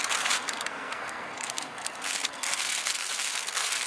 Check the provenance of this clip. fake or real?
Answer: fake